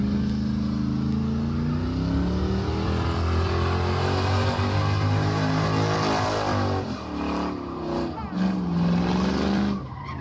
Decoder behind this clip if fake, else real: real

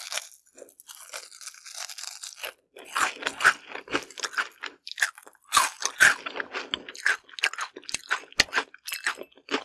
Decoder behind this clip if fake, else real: real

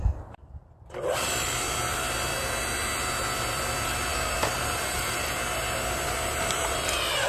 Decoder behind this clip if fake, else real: real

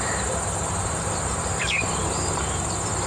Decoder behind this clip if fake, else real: real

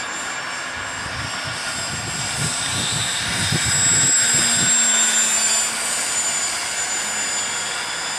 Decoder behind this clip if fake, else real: real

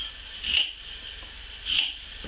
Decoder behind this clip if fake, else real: real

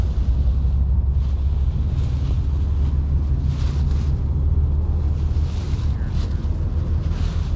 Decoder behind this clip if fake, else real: real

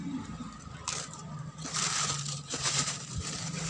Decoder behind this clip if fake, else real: fake, vocoder, BigVGAN v2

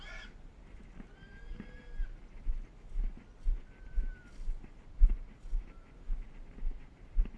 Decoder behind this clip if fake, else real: real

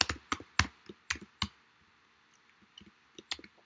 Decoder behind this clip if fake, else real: real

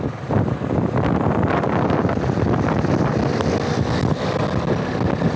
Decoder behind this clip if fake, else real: real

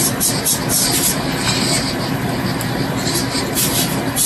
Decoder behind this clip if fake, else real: fake, vocoder, BigVGAN v2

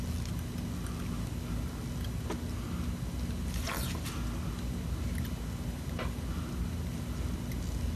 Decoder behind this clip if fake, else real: real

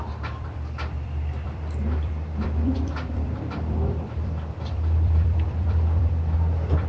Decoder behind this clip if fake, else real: fake, vocoder, BigVGAN v2